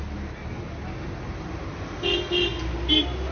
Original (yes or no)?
yes